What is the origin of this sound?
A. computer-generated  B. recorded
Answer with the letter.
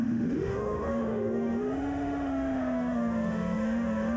A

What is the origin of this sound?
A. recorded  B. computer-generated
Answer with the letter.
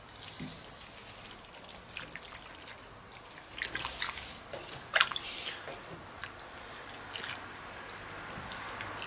A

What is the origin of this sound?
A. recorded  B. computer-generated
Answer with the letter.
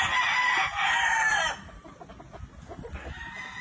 A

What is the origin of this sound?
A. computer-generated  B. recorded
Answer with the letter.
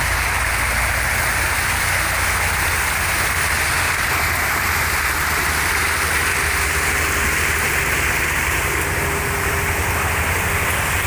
B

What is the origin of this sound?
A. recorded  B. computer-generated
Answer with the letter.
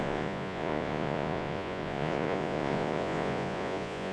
B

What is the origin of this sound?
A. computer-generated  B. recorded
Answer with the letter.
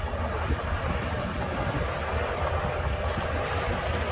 B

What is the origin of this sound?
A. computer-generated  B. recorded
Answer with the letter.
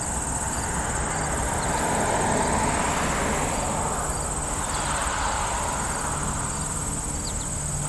B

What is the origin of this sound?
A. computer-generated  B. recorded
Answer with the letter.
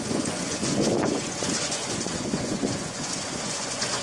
A